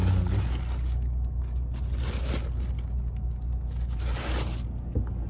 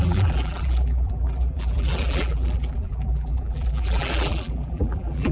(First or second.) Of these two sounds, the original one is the first